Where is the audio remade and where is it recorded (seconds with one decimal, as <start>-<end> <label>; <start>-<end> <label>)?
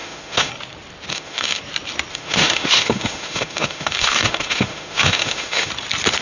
0.0-0.5 remade; 0.5-1.1 recorded; 1.1-1.6 remade; 1.6-2.1 recorded; 2.1-5.7 remade; 5.7-6.2 recorded